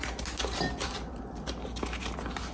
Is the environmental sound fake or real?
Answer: real